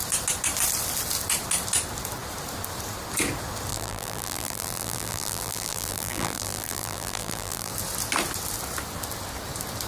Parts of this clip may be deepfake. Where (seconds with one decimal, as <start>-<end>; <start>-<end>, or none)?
3.7-7.7

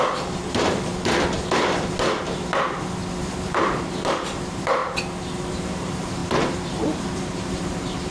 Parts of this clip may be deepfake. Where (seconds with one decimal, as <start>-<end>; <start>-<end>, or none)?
0.0-0.9; 3.2-4.8; 5.5-8.1